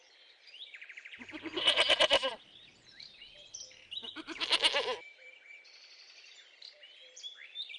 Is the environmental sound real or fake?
fake